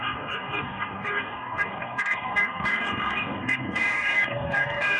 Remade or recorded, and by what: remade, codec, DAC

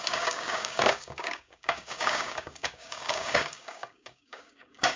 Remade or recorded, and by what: remade, codec, DAC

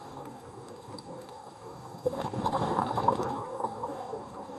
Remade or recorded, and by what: remade, codec, DAC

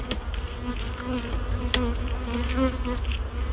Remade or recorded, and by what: recorded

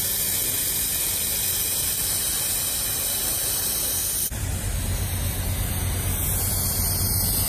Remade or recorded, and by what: recorded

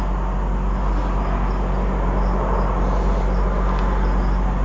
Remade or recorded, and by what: recorded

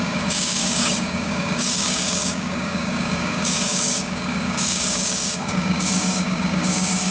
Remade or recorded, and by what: remade, codec, DAC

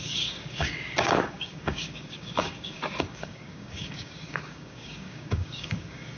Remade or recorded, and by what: remade, codec, DAC